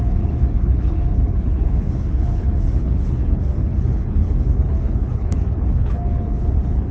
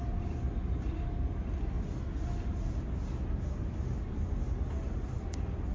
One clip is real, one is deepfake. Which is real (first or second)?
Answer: second